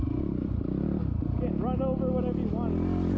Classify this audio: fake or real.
real